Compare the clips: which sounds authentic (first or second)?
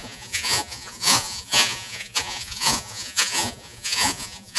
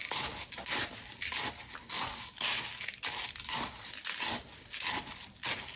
second